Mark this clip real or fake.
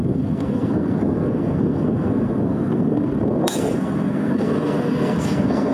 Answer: fake